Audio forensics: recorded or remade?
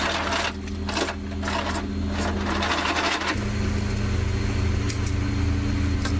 recorded